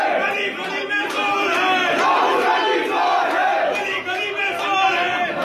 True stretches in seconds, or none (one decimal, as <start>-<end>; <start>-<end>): 3.1-4.4